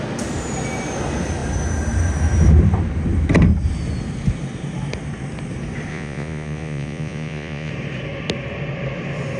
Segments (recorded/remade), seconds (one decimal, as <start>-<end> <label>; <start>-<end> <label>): 0.0-5.9 recorded; 5.9-7.7 remade; 7.7-9.4 recorded